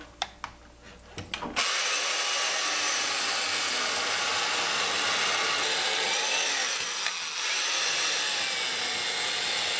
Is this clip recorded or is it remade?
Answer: recorded